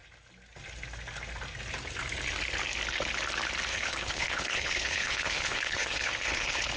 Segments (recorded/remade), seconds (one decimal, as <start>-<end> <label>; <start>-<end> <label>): 0.0-3.7 recorded; 3.7-6.8 remade